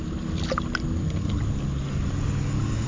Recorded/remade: recorded